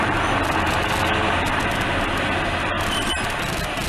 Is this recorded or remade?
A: recorded